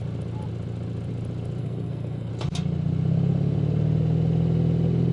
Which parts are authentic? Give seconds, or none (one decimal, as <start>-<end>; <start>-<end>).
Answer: 0.0-1.6; 2.3-5.1